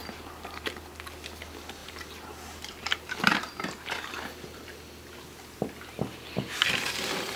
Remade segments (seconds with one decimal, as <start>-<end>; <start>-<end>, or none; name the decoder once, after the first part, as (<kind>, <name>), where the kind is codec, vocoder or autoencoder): 0.0-0.7 (vocoder, BigVGAN v2); 1.8-4.8